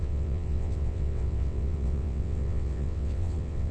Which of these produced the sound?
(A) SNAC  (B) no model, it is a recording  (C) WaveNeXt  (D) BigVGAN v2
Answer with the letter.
C